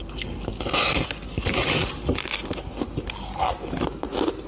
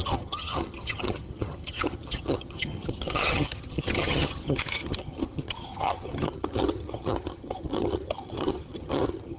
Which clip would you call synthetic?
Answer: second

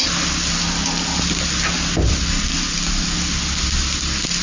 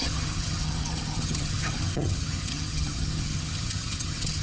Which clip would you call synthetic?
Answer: second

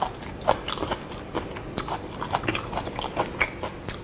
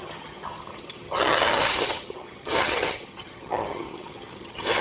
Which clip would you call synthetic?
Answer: second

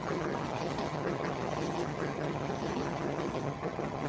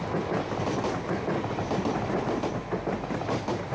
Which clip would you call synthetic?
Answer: first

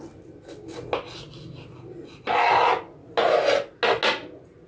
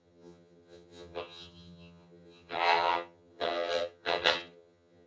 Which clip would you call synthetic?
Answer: second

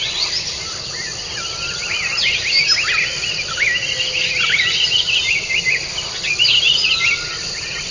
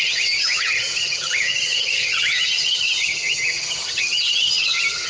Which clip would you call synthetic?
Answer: second